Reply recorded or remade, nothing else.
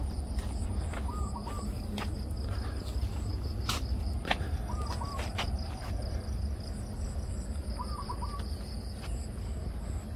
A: recorded